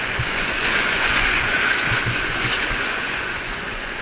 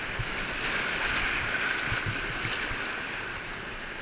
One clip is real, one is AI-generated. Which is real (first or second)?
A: second